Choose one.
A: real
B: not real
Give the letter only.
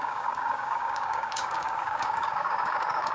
B